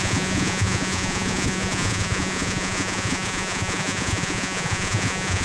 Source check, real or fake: fake